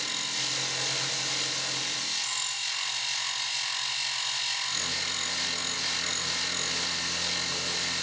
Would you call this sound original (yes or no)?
yes